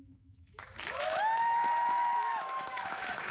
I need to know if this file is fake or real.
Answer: fake